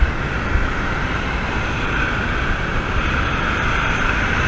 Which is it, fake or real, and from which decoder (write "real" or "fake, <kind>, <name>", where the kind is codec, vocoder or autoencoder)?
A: real